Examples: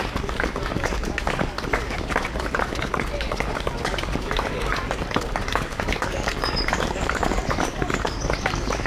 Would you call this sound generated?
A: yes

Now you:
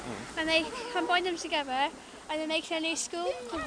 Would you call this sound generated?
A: no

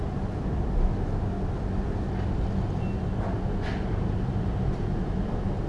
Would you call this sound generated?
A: no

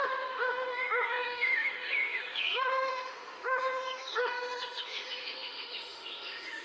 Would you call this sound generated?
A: yes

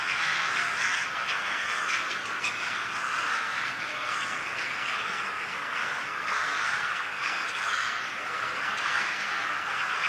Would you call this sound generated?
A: yes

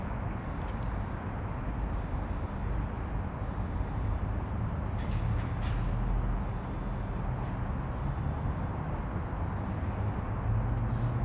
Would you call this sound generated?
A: no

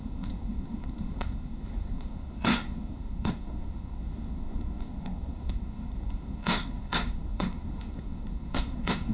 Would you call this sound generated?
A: yes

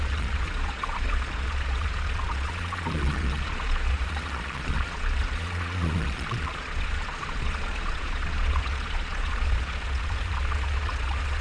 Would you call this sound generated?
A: yes